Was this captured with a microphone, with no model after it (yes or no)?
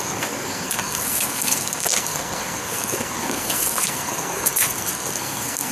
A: no